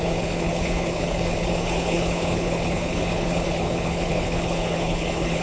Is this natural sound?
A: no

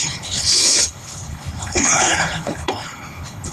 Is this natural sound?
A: no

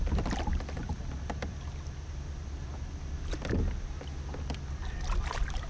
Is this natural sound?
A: yes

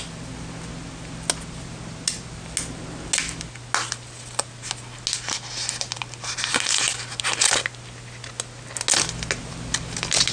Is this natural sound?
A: yes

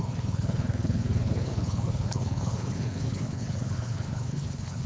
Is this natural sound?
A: no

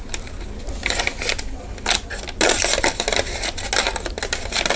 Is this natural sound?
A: yes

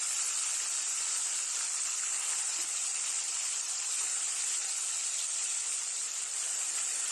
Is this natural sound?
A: yes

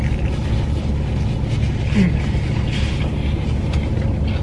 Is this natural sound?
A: yes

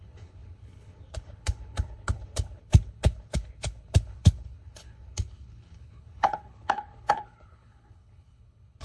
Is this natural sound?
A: no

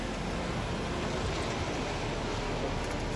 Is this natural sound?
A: yes